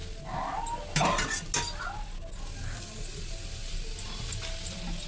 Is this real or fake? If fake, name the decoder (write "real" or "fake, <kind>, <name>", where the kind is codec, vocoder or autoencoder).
real